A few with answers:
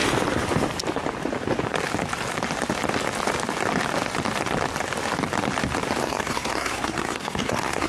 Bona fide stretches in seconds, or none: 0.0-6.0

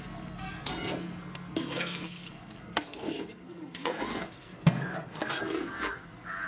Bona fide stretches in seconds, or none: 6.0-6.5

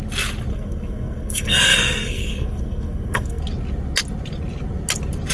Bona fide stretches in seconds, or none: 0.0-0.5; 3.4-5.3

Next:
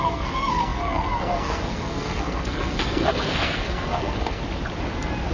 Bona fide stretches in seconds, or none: 4.4-5.3

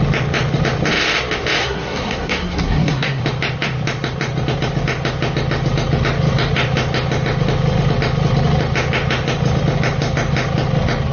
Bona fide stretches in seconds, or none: 0.0-1.6; 3.2-11.1

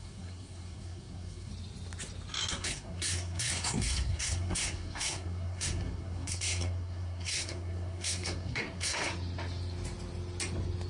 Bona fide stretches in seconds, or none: 1.5-2.5; 9.1-10.9

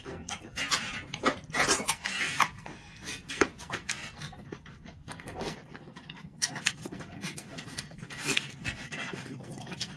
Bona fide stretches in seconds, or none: 0.6-1.9

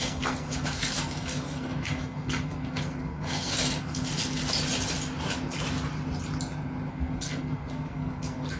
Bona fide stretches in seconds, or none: 4.4-6.9